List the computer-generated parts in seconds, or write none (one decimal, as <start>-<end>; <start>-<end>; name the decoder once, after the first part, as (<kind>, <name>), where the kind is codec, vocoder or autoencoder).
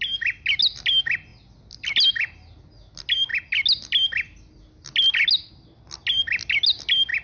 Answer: none